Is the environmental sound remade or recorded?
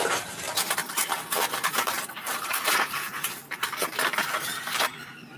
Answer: remade